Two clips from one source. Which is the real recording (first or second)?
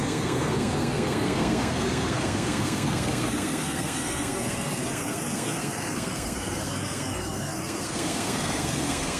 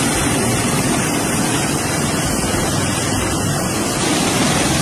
second